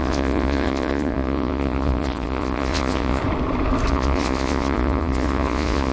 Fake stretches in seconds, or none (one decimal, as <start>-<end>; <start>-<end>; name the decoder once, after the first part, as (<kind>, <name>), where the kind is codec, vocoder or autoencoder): 0.0-3.2 (vocoder, Vocos); 3.9-5.9